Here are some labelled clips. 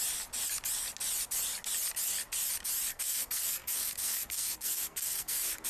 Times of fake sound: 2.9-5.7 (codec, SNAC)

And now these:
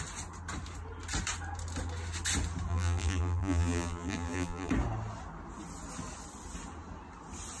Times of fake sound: 2.7-4.7 (vocoder, BigVGAN v2)

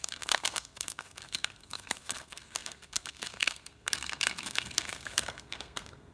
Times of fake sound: 0.0-6.1 (codec, SNAC)

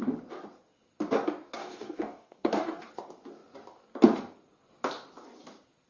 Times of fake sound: 1.6-2.9 (codec, DAC)

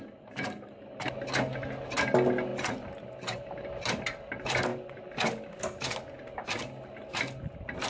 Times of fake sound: none